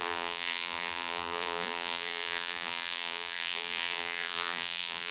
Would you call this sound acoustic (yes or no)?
no